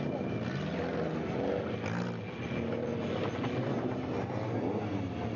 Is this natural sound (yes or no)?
yes